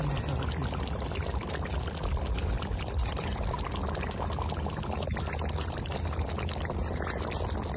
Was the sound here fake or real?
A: real